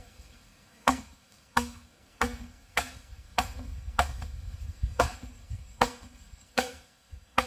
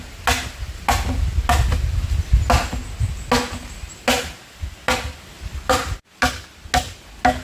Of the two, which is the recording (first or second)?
second